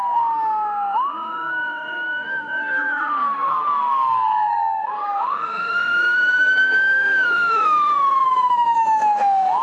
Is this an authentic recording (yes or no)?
no